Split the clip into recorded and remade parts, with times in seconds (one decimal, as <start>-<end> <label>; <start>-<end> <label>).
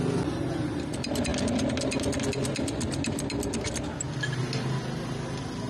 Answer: 0.0-5.7 recorded